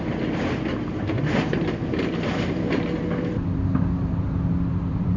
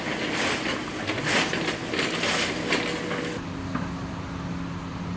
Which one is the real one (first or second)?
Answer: second